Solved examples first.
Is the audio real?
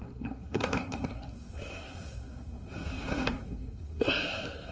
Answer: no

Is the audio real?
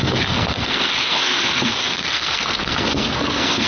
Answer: no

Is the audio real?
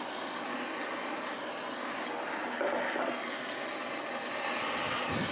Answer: yes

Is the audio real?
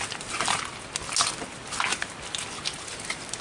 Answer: yes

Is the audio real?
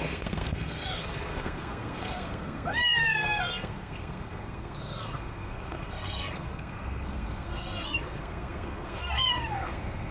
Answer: no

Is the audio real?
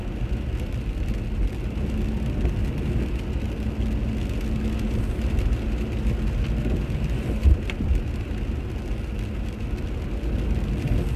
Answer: yes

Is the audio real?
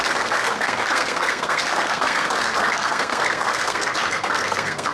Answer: no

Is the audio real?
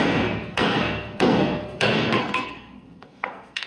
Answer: no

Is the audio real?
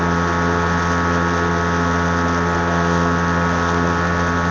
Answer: yes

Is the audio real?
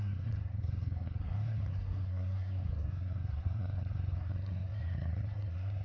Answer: no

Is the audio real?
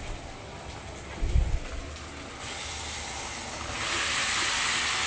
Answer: yes